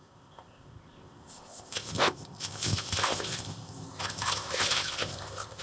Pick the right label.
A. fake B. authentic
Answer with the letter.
A